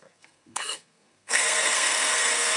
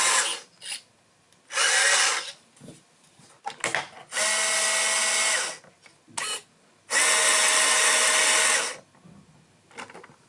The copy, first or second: first